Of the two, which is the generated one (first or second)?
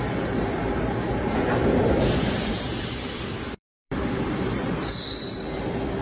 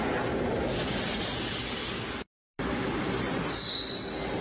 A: first